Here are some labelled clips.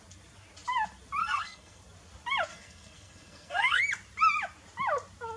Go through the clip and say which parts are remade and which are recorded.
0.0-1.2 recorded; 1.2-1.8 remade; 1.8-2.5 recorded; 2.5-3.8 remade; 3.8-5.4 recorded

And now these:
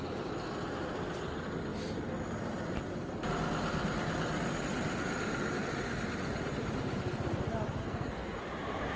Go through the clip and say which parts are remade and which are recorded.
0.0-7.8 recorded; 7.8-8.4 remade; 8.4-9.0 recorded